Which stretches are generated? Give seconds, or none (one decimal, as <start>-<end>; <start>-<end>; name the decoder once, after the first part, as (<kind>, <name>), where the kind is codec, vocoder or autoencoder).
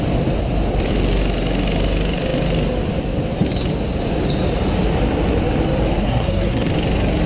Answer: 6.0-6.7 (codec, SNAC)